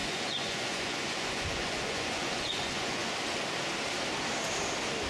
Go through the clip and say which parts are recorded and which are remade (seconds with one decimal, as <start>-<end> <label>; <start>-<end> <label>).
0.0-3.1 remade; 3.1-5.1 recorded